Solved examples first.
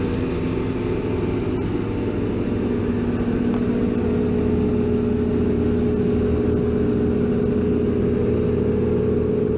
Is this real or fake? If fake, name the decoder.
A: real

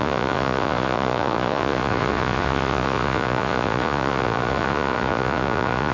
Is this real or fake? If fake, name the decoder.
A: fake, vocoder, Vocos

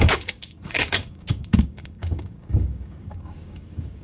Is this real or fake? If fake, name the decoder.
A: fake, codec, DAC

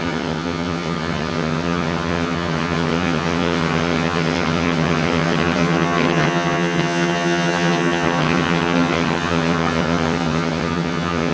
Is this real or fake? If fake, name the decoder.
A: fake, vocoder, HiFi-GAN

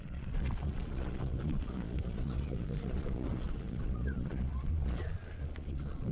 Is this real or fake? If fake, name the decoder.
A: fake, vocoder, Vocos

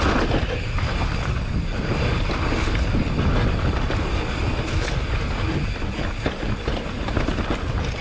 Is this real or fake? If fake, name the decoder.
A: real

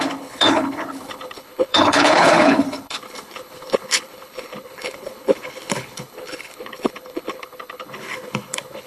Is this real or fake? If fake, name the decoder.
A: fake, codec, HILCodec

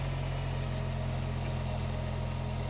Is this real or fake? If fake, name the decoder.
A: real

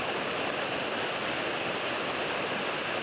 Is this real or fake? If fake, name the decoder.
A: real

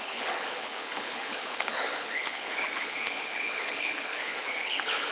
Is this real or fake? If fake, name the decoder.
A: fake, codec, HILCodec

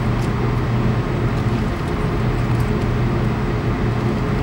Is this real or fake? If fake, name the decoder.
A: real